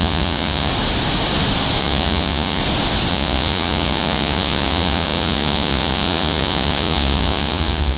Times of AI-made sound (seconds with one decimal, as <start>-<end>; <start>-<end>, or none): 0.0-0.7; 1.8-2.6; 3.1-8.0